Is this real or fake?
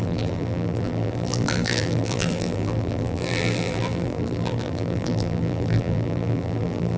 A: fake